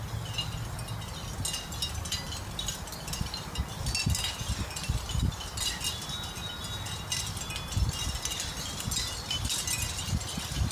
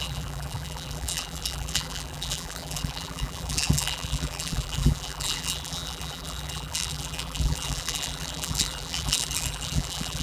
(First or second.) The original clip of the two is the first